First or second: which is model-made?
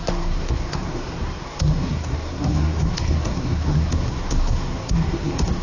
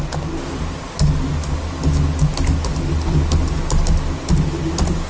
first